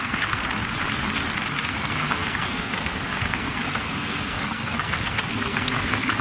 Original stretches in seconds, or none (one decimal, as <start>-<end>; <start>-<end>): 0.4-1.7